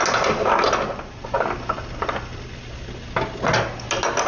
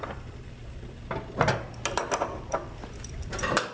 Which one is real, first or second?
first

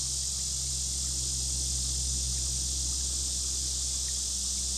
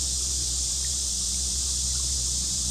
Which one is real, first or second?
first